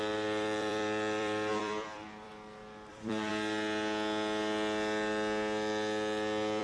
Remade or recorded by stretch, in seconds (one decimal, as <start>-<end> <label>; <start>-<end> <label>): 0.0-2.3 remade; 2.3-2.9 recorded; 2.9-3.3 remade; 3.3-6.6 recorded